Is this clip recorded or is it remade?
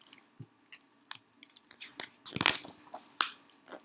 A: recorded